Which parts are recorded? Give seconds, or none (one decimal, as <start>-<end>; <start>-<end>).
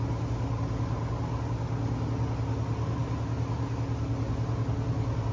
0.0-5.3